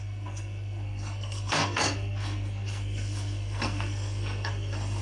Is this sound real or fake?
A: fake